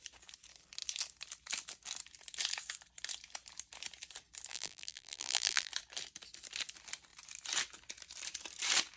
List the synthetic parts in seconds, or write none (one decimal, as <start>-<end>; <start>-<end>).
4.5-5.7